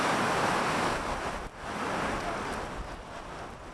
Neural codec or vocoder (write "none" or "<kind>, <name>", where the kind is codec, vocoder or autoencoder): none